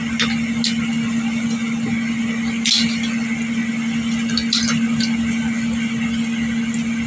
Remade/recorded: recorded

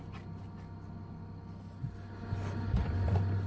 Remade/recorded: recorded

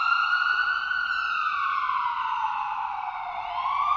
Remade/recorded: recorded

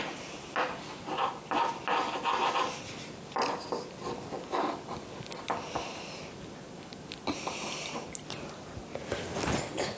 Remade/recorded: recorded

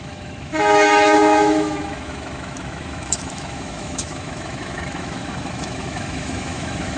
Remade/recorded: remade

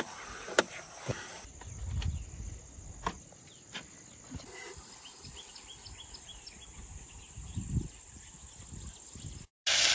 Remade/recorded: recorded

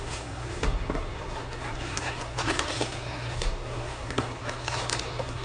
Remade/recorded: remade